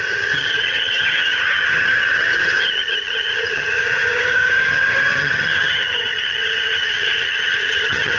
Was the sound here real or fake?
fake